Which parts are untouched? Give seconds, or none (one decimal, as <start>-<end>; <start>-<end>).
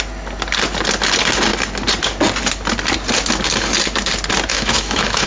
0.0-4.5